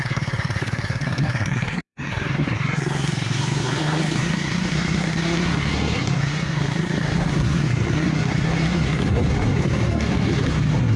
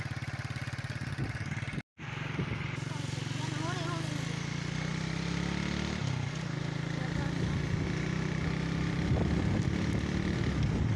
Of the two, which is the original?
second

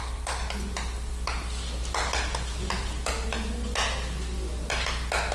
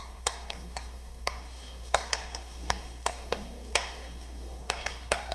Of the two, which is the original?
first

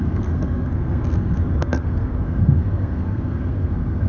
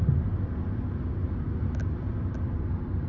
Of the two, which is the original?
second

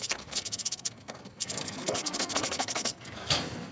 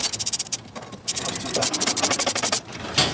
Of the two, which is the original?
second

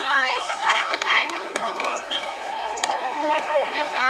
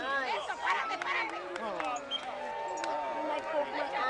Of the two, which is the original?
second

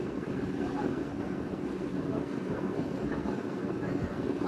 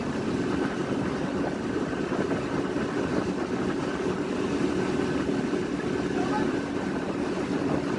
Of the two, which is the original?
second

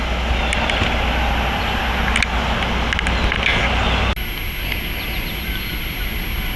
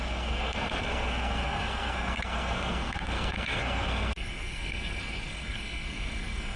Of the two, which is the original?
first